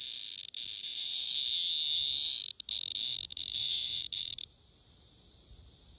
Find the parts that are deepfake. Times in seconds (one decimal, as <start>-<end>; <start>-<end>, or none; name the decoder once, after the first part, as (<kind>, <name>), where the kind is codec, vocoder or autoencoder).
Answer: 0.8-1.3 (vocoder, BigVGAN v2); 3.3-4.3